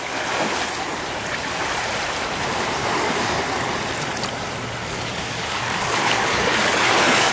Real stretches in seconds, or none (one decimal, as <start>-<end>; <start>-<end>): 0.0-2.8; 3.4-4.8